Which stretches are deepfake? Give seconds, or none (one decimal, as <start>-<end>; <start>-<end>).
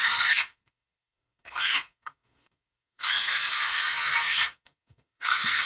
0.0-5.7